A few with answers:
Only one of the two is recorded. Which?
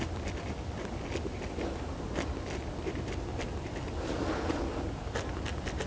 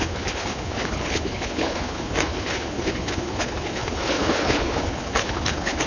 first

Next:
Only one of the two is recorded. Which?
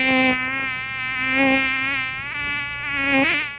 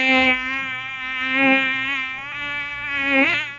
first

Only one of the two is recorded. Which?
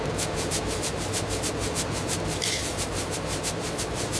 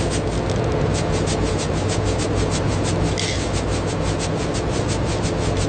second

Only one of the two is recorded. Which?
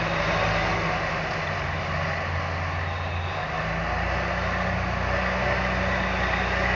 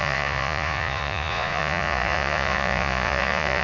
first